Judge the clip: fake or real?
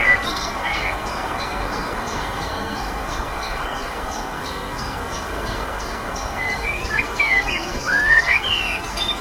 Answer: fake